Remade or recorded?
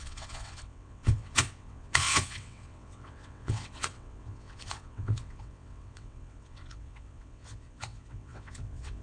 remade